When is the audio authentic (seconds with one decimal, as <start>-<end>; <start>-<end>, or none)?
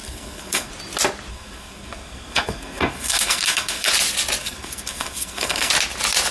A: 0.7-1.3; 3.9-4.4; 5.7-6.3